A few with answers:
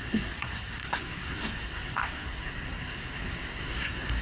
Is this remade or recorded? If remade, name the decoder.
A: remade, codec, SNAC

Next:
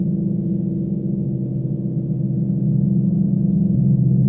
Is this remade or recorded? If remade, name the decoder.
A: recorded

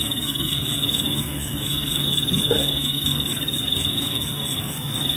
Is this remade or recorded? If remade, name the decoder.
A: remade, codec, SNAC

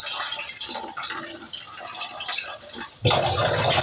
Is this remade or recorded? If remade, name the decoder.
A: recorded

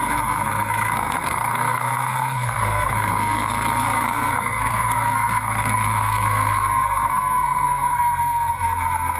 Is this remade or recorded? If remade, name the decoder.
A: remade, codec, SNAC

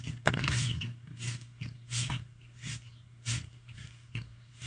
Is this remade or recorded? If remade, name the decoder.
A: remade, codec, SNAC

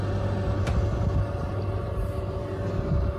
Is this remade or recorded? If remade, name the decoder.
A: recorded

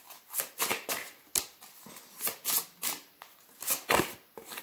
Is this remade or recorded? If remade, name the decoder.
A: recorded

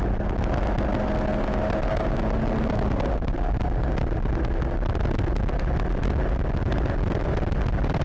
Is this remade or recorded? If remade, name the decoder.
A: recorded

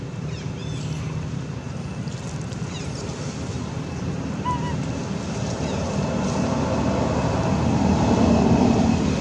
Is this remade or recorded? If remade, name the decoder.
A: recorded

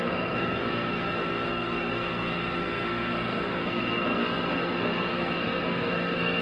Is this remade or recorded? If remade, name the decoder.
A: remade, codec, SNAC